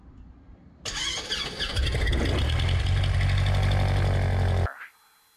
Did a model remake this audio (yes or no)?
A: no